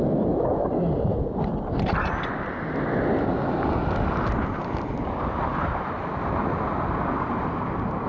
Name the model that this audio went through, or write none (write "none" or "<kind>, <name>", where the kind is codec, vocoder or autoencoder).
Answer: none